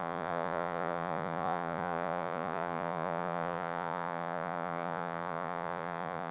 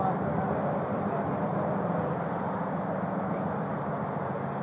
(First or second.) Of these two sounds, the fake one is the first